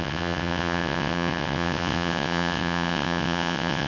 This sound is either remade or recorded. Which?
remade